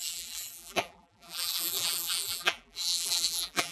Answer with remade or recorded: remade